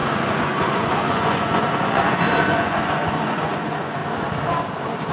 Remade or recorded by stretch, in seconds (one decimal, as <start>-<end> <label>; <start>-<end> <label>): 0.0-4.0 remade; 4.0-5.1 recorded